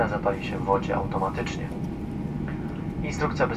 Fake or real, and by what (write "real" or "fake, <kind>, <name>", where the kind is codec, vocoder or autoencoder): real